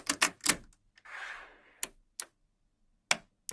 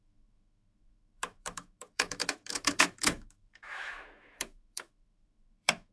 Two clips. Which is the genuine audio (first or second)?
first